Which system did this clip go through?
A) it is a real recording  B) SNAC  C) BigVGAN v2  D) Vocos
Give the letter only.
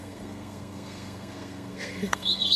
B